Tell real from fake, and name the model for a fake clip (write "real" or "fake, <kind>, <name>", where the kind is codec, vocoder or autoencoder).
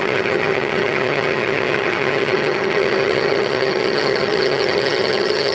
fake, vocoder, HiFi-GAN